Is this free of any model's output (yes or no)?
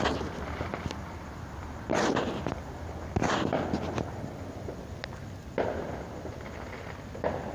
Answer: yes